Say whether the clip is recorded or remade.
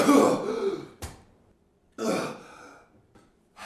remade